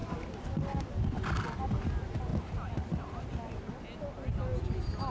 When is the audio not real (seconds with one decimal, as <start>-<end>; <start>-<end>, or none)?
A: none